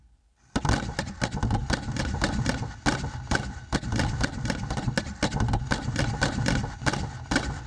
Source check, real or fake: real